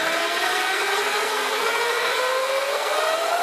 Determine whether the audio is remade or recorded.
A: remade